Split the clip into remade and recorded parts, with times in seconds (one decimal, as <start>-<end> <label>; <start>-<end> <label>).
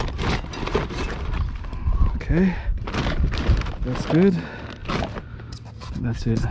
0.0-2.7 recorded; 2.7-3.7 remade; 3.7-4.8 recorded; 4.8-5.9 remade; 5.9-6.5 recorded